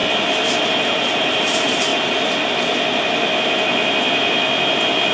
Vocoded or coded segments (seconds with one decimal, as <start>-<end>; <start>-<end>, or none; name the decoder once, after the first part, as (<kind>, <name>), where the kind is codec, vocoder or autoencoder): 0.6-1.9 (vocoder, BigVGAN v2)